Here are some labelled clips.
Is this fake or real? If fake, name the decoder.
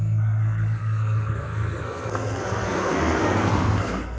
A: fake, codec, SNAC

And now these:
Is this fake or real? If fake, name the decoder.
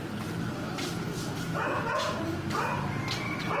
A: real